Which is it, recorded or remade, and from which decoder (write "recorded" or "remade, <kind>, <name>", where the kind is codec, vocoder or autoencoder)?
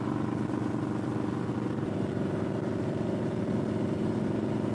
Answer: recorded